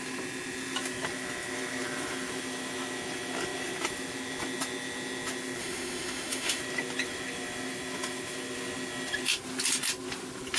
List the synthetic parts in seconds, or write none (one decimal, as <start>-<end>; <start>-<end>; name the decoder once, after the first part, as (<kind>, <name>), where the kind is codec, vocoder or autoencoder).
5.6-6.6 (autoencoder, DAC-VAE)